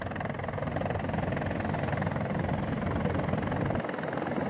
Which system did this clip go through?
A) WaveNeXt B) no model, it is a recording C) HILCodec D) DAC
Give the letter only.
B